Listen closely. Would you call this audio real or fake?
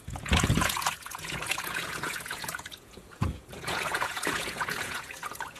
fake